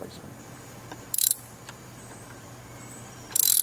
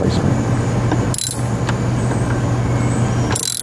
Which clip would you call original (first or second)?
second